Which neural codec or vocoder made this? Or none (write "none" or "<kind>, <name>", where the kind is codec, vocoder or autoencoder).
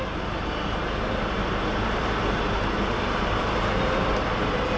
vocoder, BigVGAN v2